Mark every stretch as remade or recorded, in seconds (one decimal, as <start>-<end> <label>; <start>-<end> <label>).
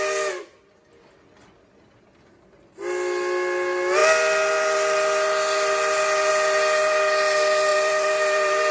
0.0-7.7 recorded; 7.7-8.7 remade